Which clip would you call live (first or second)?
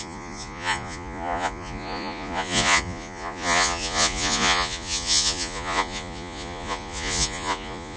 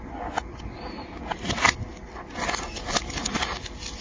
second